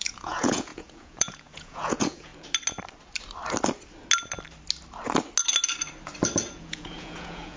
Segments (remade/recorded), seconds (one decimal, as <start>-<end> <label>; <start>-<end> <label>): 0.0-2.3 remade; 2.3-6.5 recorded; 6.5-7.6 remade